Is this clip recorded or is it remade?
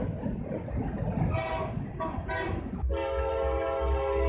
recorded